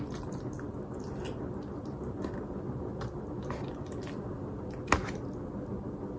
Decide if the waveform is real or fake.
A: real